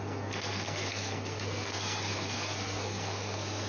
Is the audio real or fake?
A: fake